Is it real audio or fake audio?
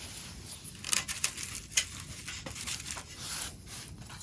real